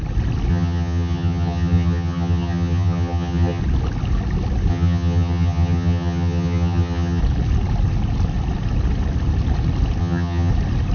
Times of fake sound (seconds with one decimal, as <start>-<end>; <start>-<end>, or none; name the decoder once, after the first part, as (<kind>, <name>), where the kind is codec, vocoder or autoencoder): 0.5-3.6 (vocoder, HiFi-GAN); 4.7-7.2; 10.0-10.5